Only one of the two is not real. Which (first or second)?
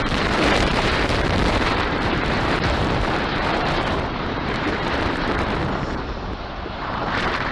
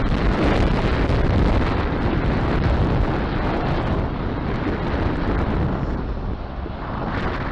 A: first